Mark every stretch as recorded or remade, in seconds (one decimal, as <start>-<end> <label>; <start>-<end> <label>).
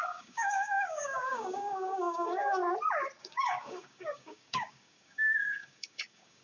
0.0-2.6 remade; 2.6-3.2 recorded; 3.2-6.4 remade